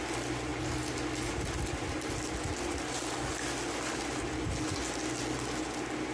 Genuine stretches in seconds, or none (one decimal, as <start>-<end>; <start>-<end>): 0.0-6.1

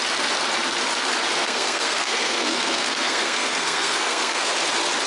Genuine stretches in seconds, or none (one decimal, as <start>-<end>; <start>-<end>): 0.0-1.4; 4.5-5.1

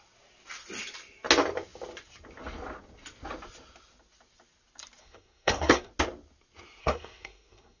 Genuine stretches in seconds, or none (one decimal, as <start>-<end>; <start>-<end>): 0.0-5.0; 5.9-6.8